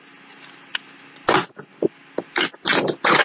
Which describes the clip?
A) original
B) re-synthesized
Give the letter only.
A